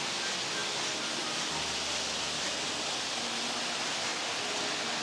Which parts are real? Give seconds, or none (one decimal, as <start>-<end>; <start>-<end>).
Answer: 0.0-5.0